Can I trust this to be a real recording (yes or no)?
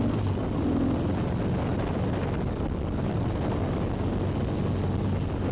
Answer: yes